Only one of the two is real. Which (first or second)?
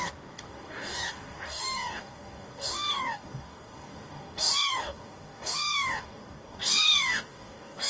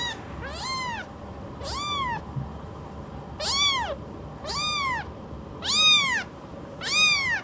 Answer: second